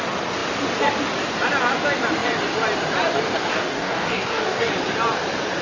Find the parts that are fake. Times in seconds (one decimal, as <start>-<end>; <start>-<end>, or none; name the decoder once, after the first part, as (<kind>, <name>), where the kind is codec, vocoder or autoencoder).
3.5-4.7 (codec, DAC)